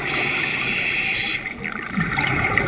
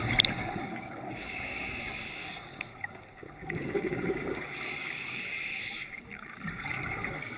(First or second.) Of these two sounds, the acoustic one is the first